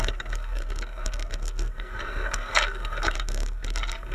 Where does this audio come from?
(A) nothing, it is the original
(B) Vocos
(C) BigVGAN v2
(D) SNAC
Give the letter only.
D